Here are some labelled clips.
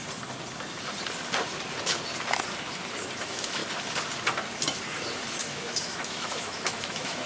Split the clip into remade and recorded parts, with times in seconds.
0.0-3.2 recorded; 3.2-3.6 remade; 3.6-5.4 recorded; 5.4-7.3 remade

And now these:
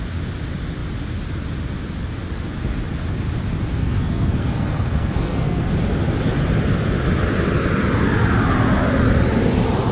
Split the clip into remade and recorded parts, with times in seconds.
0.0-3.8 recorded; 3.8-5.7 remade; 5.7-9.9 recorded